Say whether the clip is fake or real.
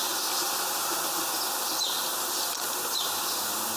real